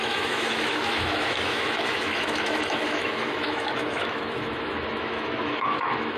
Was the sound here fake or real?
fake